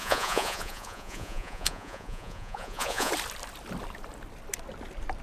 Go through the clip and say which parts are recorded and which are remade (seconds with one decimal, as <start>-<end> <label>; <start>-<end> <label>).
0.0-3.1 remade; 3.1-5.2 recorded